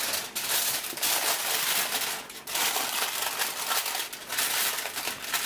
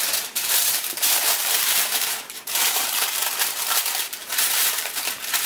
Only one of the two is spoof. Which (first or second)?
second